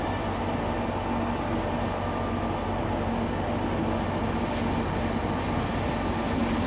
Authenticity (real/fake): real